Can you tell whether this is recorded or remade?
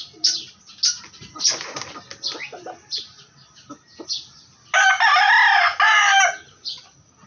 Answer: recorded